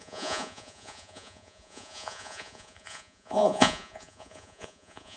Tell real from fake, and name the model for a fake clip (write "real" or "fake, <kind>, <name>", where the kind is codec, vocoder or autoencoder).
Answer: fake, vocoder, Vocos